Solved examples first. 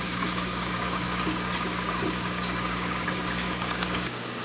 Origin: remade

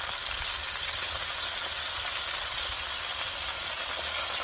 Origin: recorded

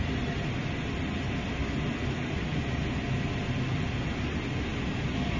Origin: recorded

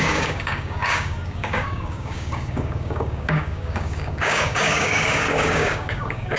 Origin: remade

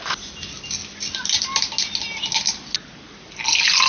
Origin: recorded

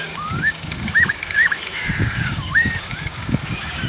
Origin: remade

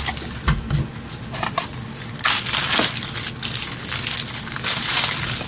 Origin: recorded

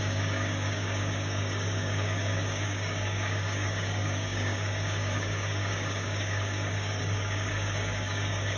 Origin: remade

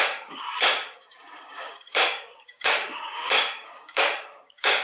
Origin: remade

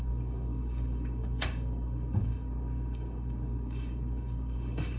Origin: remade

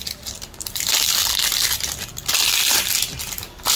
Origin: recorded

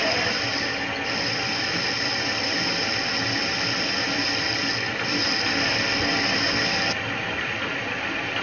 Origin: recorded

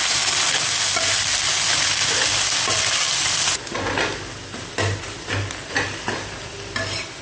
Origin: recorded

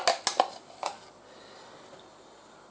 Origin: recorded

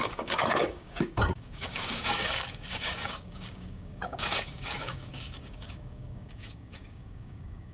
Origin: remade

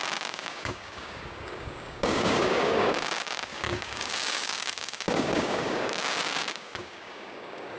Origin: remade